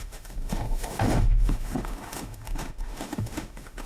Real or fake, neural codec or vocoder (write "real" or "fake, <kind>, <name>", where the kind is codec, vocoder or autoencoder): fake, autoencoder, DAC-VAE